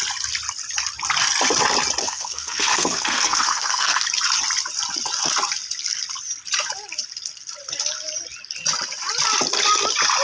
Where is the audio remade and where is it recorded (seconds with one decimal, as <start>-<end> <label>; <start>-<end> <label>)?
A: 0.0-2.0 recorded; 2.0-4.0 remade; 4.0-10.2 recorded